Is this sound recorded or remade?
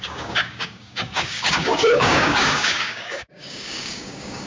remade